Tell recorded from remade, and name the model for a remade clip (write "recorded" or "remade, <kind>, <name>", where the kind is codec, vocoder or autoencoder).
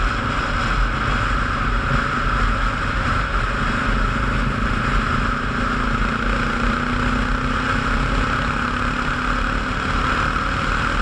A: recorded